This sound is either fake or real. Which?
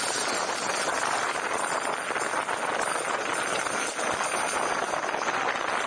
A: real